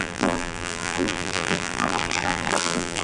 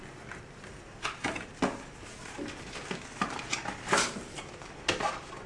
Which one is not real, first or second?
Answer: first